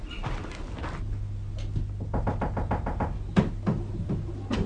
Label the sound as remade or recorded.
recorded